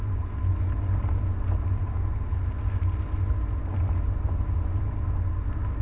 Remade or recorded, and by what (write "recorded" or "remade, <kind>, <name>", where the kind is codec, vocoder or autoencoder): recorded